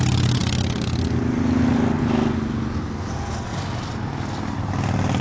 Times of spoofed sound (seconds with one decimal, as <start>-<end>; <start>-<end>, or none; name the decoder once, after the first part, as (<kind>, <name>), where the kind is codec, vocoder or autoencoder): none